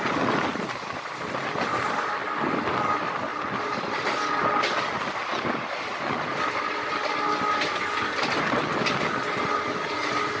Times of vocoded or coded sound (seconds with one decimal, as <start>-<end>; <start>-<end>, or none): none